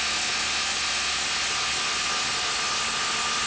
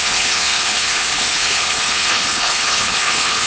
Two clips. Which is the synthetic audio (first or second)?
second